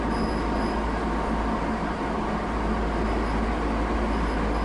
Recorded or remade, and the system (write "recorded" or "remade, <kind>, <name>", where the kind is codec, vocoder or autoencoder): recorded